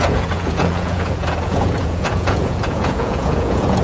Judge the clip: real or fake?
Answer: fake